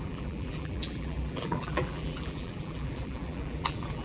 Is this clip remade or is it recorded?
remade